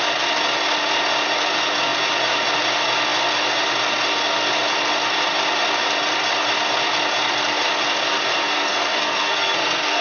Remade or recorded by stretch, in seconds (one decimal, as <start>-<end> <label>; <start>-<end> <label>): 0.0-8.4 recorded; 8.4-10.0 remade